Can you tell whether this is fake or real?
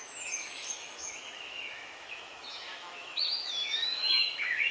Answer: fake